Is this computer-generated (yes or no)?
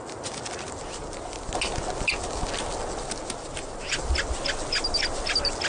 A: no